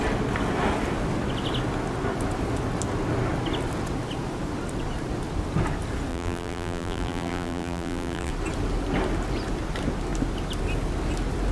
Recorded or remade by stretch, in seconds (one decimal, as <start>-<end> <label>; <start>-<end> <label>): 0.0-6.1 recorded; 6.1-8.3 remade; 8.3-11.5 recorded